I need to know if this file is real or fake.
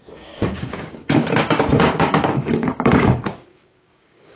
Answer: fake